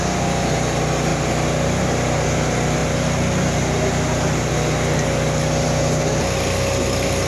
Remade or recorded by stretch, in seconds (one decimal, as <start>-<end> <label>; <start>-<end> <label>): 0.0-7.3 recorded